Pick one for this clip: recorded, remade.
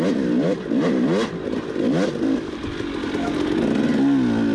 recorded